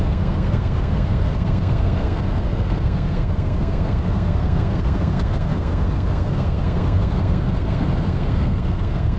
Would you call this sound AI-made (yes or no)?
yes